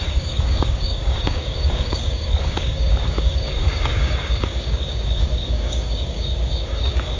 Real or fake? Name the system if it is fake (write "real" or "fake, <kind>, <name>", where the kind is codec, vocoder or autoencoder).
fake, codec, DAC